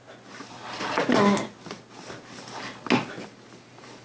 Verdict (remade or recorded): recorded